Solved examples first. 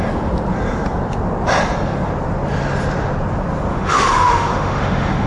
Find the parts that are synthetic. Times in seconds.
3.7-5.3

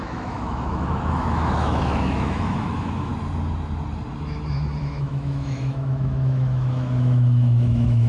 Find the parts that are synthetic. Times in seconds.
0.0-3.1; 4.8-8.1

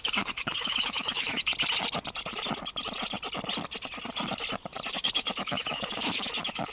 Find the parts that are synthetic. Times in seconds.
0.0-1.5; 4.9-6.7

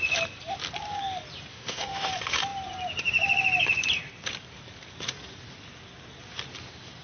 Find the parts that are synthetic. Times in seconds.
1.5-2.1

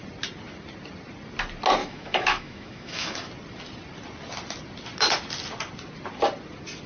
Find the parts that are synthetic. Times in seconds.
1.8-3.3

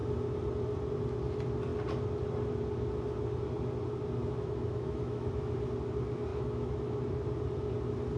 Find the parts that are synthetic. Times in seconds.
4.2-5.3; 6.3-7.0

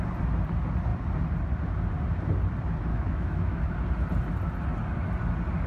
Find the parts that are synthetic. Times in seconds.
2.9-3.7

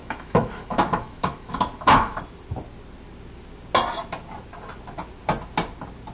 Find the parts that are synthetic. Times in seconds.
0.0-2.2